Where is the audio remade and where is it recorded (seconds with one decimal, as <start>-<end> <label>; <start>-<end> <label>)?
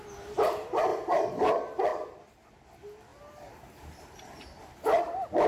0.0-0.9 recorded; 0.9-1.5 remade; 1.5-3.1 recorded; 3.1-5.5 remade